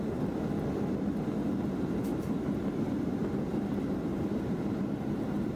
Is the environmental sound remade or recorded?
recorded